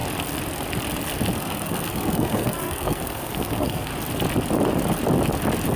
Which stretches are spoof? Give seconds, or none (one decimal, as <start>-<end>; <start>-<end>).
1.4-3.9